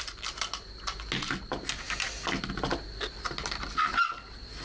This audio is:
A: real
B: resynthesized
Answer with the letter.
A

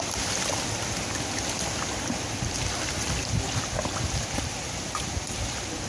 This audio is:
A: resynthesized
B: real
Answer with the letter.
B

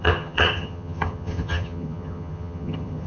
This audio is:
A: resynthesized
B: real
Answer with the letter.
A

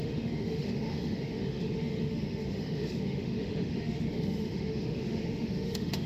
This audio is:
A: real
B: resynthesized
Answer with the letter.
B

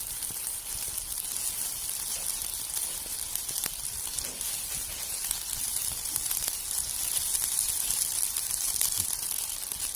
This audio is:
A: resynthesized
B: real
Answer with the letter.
B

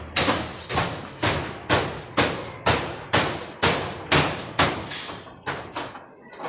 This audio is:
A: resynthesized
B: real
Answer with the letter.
B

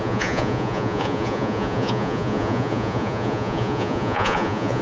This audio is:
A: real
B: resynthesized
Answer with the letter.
B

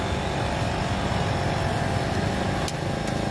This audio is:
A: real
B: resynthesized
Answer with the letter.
A